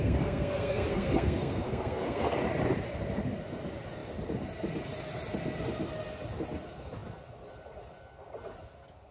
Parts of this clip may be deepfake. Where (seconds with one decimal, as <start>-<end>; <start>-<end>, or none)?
0.0-2.4